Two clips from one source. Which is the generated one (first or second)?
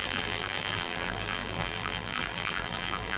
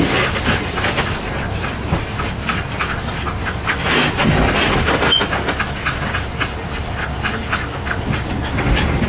first